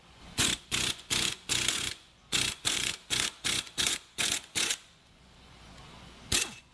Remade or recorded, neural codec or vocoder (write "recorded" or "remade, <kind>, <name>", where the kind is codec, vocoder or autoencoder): remade, vocoder, Vocos